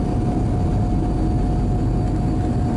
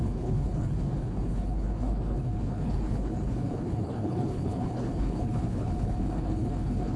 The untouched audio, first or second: first